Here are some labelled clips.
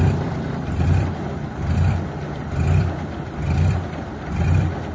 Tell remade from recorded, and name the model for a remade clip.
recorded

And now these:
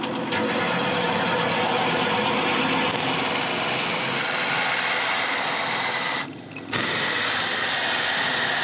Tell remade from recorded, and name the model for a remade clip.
recorded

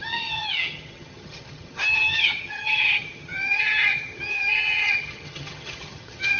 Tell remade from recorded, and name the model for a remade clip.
remade, vocoder, HiFi-GAN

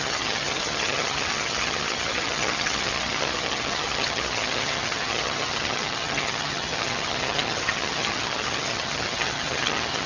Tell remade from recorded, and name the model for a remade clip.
remade, vocoder, HiFi-GAN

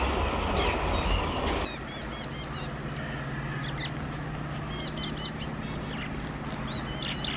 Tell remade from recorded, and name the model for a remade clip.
recorded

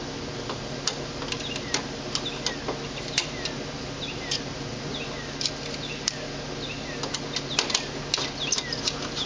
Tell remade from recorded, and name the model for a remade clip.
recorded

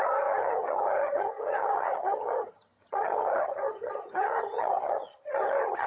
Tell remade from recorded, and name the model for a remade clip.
remade, vocoder, HiFi-GAN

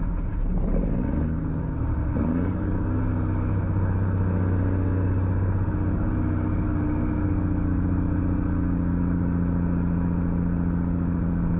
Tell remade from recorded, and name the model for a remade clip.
recorded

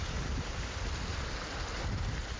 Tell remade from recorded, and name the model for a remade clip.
recorded